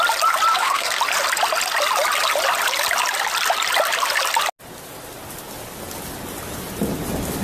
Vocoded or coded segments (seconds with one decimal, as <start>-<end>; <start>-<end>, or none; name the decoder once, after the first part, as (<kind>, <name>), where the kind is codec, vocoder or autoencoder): 0.5-1.0 (codec, SNAC)